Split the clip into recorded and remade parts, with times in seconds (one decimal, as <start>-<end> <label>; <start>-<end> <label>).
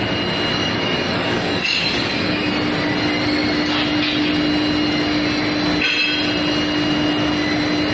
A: 0.0-0.5 recorded; 0.5-2.4 remade; 2.4-7.9 recorded